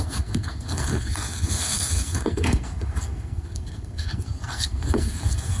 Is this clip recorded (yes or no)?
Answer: no